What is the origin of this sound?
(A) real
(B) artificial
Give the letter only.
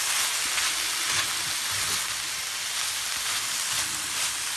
A